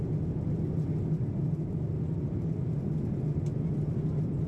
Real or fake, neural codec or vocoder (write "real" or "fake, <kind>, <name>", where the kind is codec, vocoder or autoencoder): real